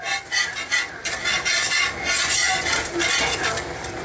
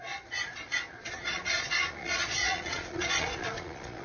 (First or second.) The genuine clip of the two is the first